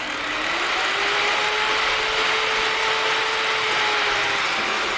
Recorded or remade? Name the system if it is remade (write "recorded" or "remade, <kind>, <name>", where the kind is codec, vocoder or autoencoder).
recorded